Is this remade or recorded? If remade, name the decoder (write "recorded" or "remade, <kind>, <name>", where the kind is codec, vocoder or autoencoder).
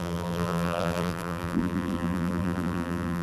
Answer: remade, vocoder, BigVGAN v2